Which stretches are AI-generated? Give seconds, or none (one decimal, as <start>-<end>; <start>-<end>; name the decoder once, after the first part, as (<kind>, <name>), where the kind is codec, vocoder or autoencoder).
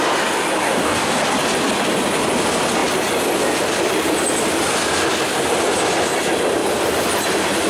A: 0.6-1.2 (codec, DAC)